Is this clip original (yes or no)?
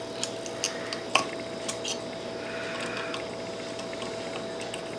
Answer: yes